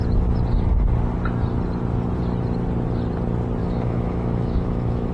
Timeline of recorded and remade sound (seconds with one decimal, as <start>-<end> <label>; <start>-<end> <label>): 0.0-3.6 recorded; 3.6-5.1 remade